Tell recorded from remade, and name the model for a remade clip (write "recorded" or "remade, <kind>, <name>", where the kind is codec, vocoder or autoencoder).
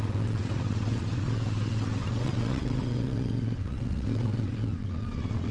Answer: remade, vocoder, WaveNeXt